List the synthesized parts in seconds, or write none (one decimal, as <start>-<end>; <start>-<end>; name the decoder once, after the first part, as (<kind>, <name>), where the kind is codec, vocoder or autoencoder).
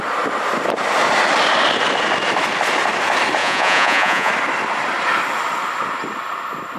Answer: 3.4-4.3 (vocoder, Vocos)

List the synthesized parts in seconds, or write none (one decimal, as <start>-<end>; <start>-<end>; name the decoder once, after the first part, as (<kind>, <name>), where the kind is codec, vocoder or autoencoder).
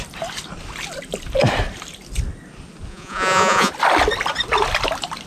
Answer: 2.9-3.7 (vocoder, Vocos)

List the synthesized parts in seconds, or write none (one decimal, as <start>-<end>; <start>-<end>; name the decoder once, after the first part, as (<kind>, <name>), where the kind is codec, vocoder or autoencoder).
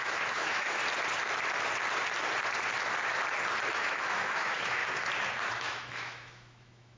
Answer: 0.0-0.8 (autoencoder, DAC-VAE); 3.7-4.8; 5.5-7.0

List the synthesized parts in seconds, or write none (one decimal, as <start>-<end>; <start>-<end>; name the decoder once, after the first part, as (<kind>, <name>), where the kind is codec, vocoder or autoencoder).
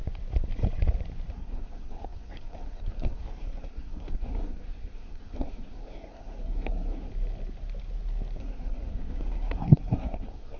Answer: 1.3-7.1 (codec, SNAC); 8.4-10.6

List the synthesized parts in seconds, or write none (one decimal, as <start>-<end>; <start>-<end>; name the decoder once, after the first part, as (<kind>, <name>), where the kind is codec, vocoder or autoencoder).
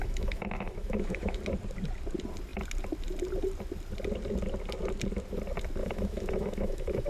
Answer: 0.0-1.4 (autoencoder, DAC-VAE); 5.8-7.1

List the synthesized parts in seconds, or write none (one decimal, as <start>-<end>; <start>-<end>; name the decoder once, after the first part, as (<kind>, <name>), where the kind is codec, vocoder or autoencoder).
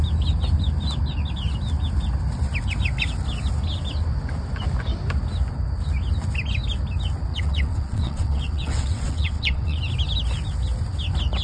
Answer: 7.3-9.8 (vocoder, WaveNeXt)